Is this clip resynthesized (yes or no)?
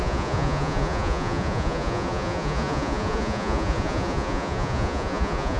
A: yes